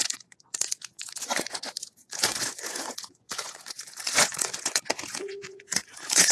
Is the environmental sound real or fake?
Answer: fake